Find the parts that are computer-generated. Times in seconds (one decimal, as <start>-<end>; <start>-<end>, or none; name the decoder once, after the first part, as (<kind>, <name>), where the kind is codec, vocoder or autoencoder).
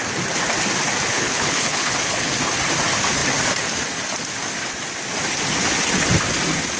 1.1-2.3 (codec, HILCodec)